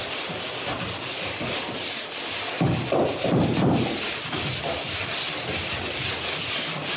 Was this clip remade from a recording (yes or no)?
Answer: yes